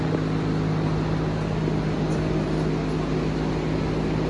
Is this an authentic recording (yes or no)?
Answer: yes